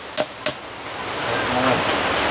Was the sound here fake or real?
real